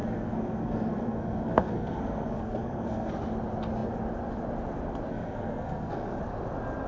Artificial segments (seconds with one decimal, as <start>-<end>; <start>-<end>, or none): 0.0-3.1; 5.1-6.2